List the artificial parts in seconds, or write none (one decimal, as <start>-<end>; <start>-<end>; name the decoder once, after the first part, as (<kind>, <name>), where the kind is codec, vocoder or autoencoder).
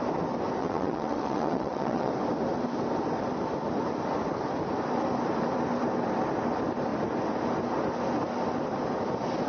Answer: 0.6-2.1 (vocoder, WaveNeXt)